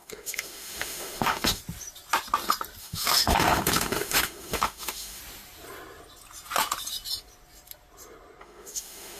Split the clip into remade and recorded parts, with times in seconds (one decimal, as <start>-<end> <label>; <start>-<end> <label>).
0.0-1.6 remade; 1.6-2.8 recorded; 2.8-5.2 remade; 5.2-8.4 recorded; 8.4-9.2 remade